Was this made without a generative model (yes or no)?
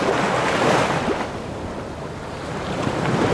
yes